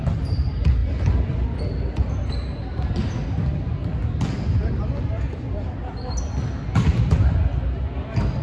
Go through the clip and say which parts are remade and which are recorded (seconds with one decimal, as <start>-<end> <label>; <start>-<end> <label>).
0.0-8.4 recorded